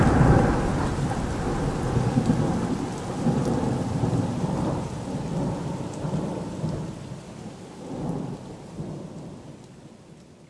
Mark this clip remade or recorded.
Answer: recorded